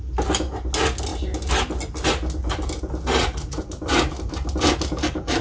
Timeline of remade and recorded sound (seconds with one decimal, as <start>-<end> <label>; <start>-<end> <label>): 0.0-5.4 recorded